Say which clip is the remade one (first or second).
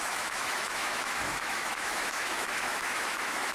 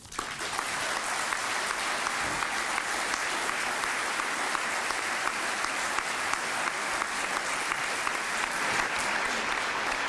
first